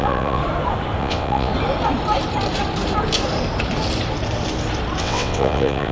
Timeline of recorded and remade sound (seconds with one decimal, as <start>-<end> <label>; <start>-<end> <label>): 0.0-0.4 remade; 0.4-1.0 recorded; 1.0-1.5 remade; 1.5-5.0 recorded; 5.0-5.9 remade